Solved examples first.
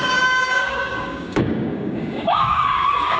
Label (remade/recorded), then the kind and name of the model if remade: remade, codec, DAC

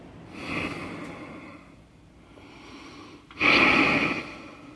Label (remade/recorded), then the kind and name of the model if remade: recorded